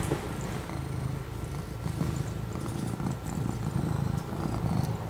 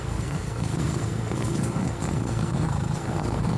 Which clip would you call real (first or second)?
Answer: first